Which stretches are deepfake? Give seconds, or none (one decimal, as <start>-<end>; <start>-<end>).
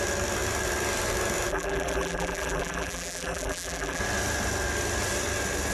1.5-4.0